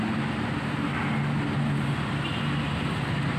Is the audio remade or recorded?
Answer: recorded